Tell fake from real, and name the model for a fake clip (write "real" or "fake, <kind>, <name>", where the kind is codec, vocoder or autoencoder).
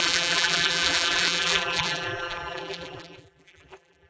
fake, vocoder, BigVGAN v2